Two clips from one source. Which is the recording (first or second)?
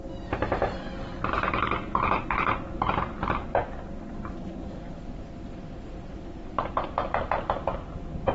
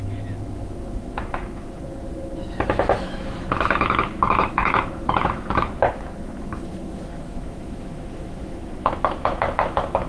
first